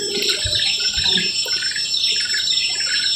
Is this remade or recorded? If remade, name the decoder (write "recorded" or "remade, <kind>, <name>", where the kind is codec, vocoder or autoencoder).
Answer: recorded